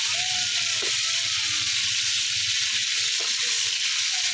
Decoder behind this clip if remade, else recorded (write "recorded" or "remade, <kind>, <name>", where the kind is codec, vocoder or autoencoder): recorded